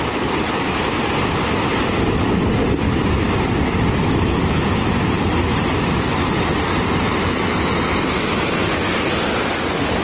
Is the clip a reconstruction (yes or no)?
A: no